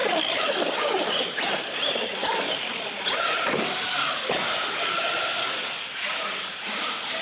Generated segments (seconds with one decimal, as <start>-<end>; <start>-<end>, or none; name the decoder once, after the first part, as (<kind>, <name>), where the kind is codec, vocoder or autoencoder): 0.8-2.2 (vocoder, BigVGAN v2); 6.5-7.2